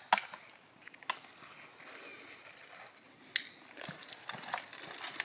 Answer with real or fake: real